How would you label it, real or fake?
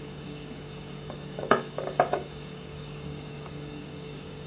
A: fake